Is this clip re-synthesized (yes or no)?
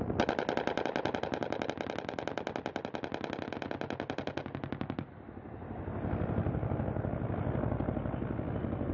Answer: no